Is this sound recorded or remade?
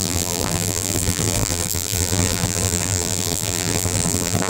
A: remade